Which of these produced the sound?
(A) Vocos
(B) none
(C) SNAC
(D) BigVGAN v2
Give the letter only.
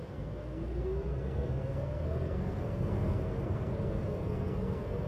C